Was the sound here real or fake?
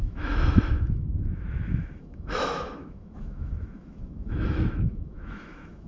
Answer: fake